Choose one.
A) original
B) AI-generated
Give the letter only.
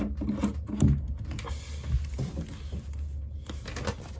A